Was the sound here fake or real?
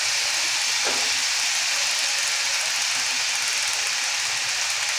real